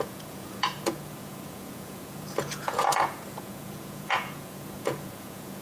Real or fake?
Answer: fake